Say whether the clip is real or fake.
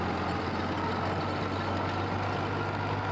real